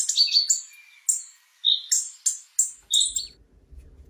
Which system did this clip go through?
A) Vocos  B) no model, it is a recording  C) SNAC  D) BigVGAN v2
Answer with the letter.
B